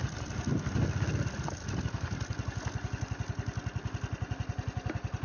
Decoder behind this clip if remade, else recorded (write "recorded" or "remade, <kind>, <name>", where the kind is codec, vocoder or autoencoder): recorded